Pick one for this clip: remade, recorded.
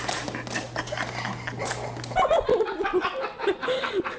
recorded